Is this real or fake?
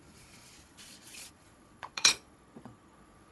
fake